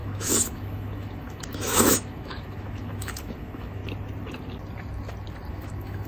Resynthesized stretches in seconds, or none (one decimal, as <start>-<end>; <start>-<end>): 0.0-3.8; 5.5-6.1